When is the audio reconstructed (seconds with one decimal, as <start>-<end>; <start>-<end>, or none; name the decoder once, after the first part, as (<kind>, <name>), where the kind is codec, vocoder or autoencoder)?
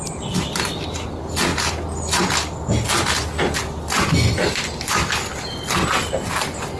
none